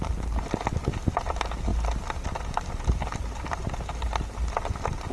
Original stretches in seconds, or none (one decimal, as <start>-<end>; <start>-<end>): 0.0-5.1